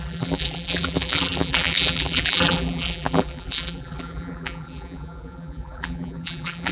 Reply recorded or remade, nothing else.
remade